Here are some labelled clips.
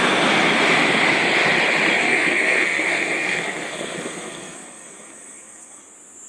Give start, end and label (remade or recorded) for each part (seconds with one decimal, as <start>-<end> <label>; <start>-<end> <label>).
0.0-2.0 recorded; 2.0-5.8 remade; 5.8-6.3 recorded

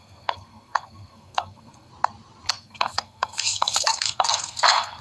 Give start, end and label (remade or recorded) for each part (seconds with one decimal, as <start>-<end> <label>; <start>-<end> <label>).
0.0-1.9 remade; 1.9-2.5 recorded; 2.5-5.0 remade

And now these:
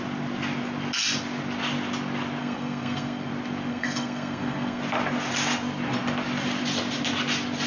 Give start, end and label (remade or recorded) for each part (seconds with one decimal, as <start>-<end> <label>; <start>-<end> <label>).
0.0-2.4 recorded; 2.4-3.3 remade; 3.3-3.7 recorded; 3.7-4.8 remade; 4.8-7.7 recorded

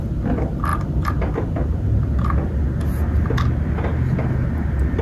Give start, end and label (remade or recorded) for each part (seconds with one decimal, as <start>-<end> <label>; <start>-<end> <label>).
0.0-5.0 recorded

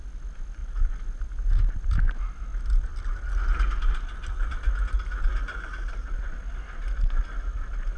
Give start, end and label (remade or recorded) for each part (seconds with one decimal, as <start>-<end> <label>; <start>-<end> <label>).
0.0-8.0 recorded

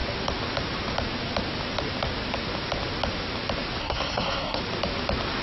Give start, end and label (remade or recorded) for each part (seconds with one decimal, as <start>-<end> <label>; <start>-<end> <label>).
0.0-3.8 recorded; 3.8-4.6 remade; 4.6-5.4 recorded

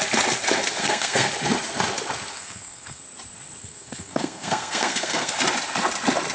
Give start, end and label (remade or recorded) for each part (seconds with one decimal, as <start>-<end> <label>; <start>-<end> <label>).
0.0-0.8 recorded; 0.8-1.3 remade; 1.3-2.3 recorded; 2.3-3.0 remade; 3.0-3.6 recorded; 3.6-5.3 remade; 5.3-6.3 recorded

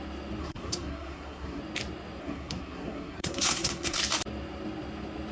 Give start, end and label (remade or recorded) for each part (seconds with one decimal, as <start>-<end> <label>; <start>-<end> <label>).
0.0-0.4 recorded; 0.4-1.6 remade; 1.6-2.2 recorded; 2.2-4.0 remade; 4.0-5.3 recorded